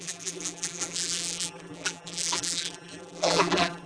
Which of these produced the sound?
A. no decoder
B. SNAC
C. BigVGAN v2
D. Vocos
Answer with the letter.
C